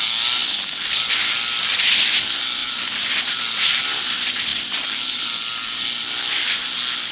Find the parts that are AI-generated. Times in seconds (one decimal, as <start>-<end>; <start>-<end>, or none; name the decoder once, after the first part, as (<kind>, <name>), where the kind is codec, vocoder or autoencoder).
none